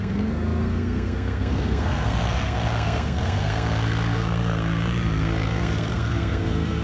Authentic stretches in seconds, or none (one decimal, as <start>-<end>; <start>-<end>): none